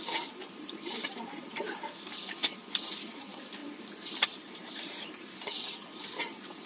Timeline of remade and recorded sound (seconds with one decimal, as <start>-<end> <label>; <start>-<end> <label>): 0.0-2.4 remade; 2.4-3.0 recorded; 3.0-6.7 remade